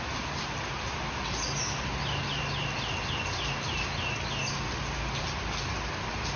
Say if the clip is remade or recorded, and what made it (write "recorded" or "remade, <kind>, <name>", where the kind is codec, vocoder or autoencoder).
recorded